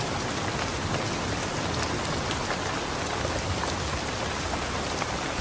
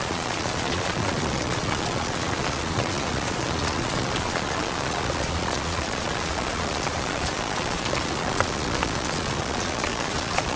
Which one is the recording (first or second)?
first